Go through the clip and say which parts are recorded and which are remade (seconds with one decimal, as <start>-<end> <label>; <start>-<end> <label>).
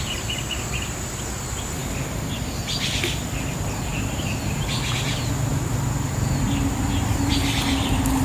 0.0-8.2 recorded